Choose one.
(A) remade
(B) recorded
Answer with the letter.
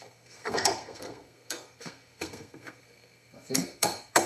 A